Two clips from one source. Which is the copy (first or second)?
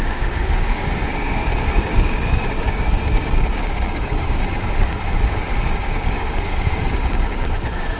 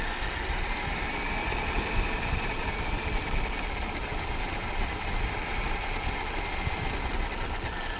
first